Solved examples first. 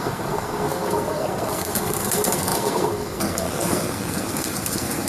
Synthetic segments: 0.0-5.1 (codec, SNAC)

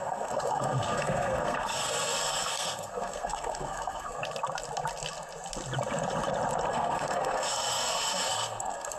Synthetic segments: 0.0-4.2 (codec, SNAC); 6.7-9.0

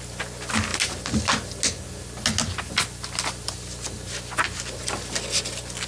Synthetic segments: none

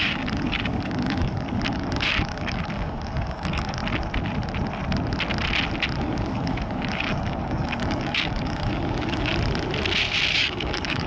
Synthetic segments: 0.0-3.8 (codec, DAC); 6.0-9.3; 10.3-11.1

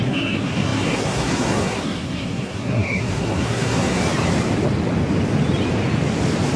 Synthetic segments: 0.0-4.0 (codec, SNAC)